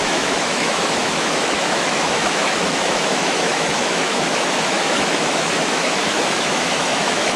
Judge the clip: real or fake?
fake